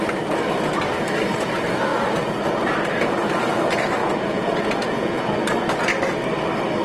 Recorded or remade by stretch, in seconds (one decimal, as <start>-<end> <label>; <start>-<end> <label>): 0.0-4.0 recorded; 4.0-5.2 remade; 5.2-6.8 recorded